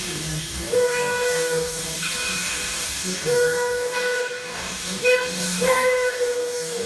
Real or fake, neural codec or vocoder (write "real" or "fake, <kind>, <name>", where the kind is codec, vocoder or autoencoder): fake, codec, DAC